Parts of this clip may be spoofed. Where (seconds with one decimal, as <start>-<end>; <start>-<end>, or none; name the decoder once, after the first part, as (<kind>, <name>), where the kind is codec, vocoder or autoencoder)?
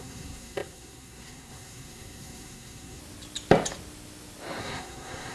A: 0.0-3.0 (codec, SNAC); 4.6-5.3